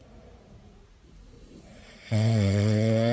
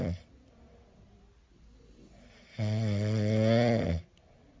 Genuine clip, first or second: second